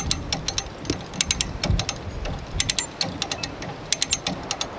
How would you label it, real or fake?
real